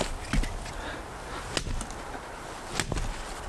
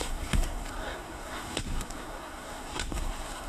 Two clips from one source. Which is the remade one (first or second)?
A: second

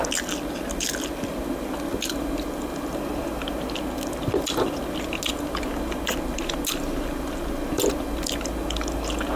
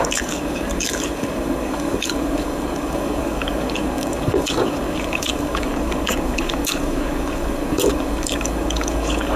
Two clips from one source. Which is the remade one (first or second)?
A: second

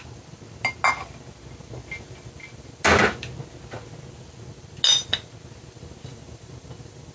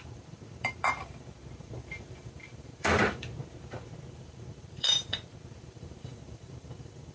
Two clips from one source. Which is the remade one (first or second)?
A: second